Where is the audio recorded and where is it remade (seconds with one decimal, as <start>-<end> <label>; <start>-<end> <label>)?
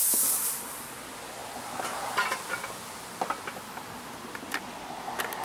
0.0-5.4 recorded